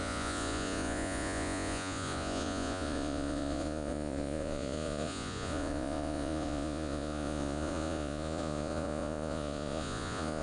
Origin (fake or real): fake